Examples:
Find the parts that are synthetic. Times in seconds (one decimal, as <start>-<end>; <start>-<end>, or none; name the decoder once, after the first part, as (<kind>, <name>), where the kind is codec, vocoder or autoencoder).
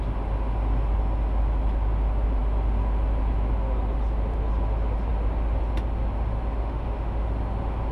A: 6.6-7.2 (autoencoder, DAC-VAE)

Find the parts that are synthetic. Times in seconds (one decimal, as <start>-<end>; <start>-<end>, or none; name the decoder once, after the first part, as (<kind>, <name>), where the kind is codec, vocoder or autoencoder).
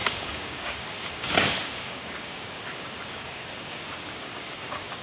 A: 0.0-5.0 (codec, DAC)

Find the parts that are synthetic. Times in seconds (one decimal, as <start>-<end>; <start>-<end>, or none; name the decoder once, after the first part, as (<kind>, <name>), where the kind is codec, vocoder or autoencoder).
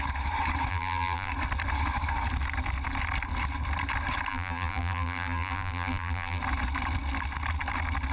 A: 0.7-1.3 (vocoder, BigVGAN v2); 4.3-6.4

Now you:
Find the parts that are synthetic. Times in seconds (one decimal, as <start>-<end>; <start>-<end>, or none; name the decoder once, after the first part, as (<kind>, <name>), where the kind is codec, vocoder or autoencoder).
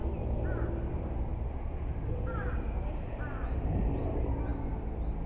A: 0.9-4.5 (vocoder, BigVGAN v2)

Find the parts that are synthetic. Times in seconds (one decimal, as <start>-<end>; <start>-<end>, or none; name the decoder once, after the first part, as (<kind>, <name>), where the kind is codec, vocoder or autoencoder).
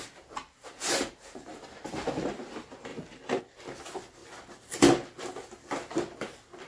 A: none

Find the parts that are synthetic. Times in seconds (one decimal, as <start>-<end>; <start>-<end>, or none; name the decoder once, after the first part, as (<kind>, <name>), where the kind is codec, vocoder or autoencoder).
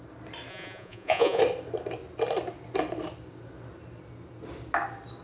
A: 0.5-1.4 (vocoder, Vocos)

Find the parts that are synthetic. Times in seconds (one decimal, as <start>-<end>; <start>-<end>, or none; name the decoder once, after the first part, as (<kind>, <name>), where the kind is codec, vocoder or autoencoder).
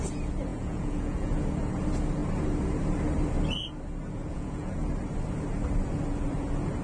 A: 0.5-1.4 (vocoder, Vocos); 4.2-4.9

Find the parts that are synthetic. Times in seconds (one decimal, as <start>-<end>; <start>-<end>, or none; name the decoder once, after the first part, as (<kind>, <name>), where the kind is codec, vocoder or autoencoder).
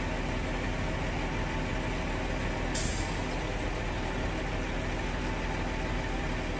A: none